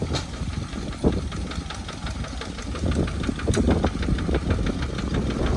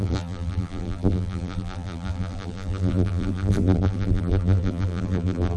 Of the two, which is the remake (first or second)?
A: second